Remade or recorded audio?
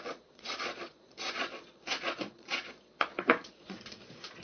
remade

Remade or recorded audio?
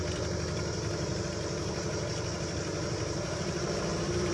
remade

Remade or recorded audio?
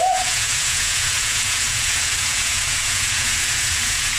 remade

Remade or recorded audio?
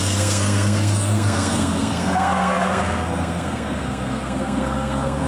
remade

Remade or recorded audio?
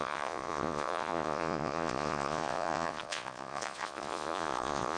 remade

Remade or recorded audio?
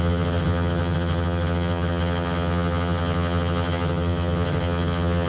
remade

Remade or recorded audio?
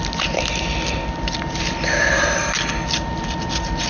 recorded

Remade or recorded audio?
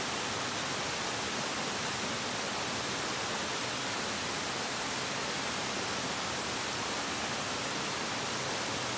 recorded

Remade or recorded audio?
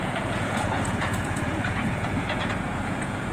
remade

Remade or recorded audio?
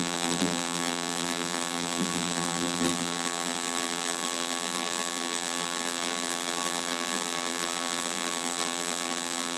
remade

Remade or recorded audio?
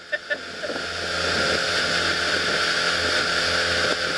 recorded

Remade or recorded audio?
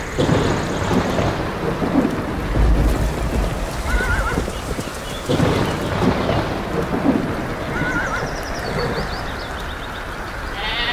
recorded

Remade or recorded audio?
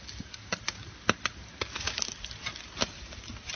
recorded